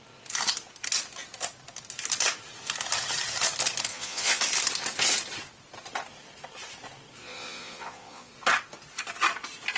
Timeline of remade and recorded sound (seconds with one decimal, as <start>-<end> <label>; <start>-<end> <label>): 0.0-3.9 recorded; 3.9-4.4 remade; 4.4-7.2 recorded; 7.2-8.3 remade; 8.3-9.8 recorded

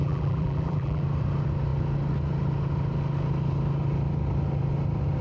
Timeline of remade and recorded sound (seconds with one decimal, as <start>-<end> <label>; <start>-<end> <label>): 0.0-1.0 remade; 1.0-5.2 recorded

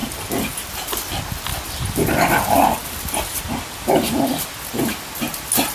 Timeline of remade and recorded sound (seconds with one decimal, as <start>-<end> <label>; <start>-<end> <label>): 0.0-0.7 remade; 0.7-1.5 recorded; 1.5-4.5 remade; 4.5-5.7 recorded

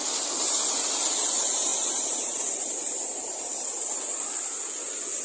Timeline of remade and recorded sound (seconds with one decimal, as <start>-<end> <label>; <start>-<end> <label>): 0.0-1.7 recorded; 1.7-3.0 remade; 3.0-5.2 recorded

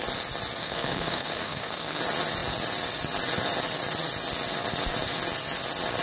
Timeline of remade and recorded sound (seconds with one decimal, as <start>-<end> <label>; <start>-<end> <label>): 0.0-0.6 recorded; 0.6-2.0 remade; 2.0-6.0 recorded

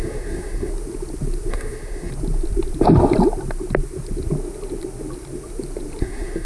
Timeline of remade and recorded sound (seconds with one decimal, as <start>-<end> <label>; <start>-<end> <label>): 0.0-0.7 remade; 0.7-1.5 recorded; 1.5-2.1 remade; 2.1-6.0 recorded; 6.0-6.5 remade

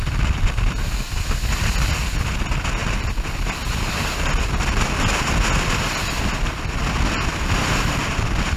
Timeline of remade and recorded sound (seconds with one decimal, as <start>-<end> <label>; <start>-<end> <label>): 0.0-8.6 recorded